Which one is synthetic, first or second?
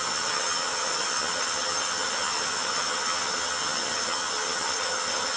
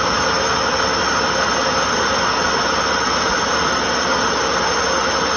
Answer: first